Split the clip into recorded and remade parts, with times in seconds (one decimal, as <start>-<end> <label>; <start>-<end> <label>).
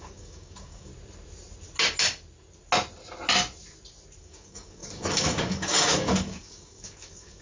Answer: 0.0-0.9 remade; 0.9-4.2 recorded; 4.2-7.4 remade